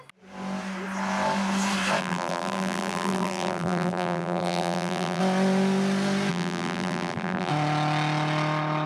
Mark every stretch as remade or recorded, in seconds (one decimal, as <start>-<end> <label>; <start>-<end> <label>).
0.0-2.0 recorded; 2.0-5.2 remade; 5.2-6.3 recorded; 6.3-7.5 remade; 7.5-8.9 recorded